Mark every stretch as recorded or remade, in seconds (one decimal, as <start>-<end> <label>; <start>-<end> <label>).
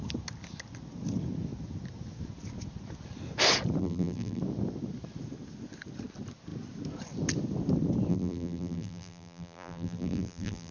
0.0-3.8 recorded; 3.8-4.4 remade; 4.4-8.1 recorded; 8.1-10.7 remade